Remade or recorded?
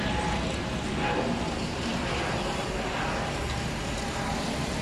recorded